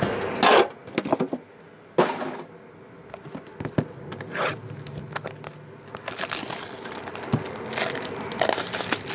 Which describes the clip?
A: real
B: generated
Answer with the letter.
A